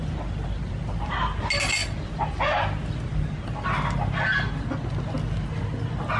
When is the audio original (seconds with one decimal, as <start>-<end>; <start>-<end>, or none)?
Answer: 0.0-6.2